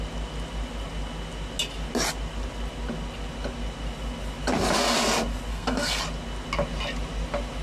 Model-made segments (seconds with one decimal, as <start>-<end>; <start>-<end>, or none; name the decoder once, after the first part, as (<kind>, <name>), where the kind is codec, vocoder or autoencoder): 5.5-6.0 (codec, SNAC)